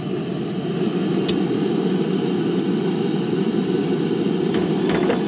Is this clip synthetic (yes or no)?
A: no